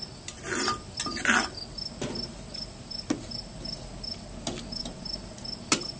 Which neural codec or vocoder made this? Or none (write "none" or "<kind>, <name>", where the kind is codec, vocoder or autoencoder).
none